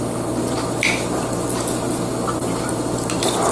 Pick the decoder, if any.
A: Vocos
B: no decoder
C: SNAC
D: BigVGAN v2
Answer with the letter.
B